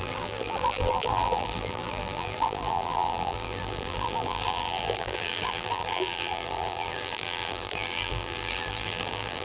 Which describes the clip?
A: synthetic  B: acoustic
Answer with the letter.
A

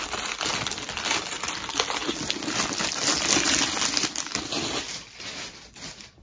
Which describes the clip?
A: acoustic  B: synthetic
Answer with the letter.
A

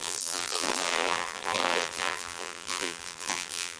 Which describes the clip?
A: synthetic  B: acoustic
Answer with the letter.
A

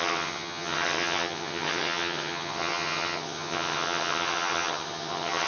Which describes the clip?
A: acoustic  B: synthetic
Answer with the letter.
B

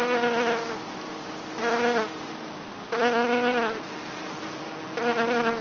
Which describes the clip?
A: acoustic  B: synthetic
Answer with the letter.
A